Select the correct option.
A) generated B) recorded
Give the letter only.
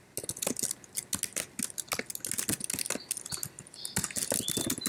B